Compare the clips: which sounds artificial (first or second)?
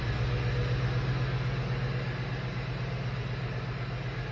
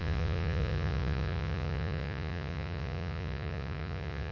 second